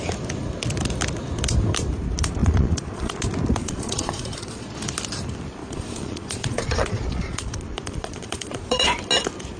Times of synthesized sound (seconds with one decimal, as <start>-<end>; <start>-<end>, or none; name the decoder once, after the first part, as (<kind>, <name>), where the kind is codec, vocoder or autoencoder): 2.4-3.1 (vocoder, Vocos); 3.6-4.7; 5.6-9.0